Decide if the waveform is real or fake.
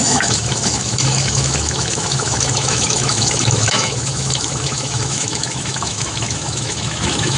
fake